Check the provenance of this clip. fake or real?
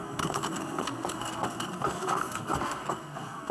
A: fake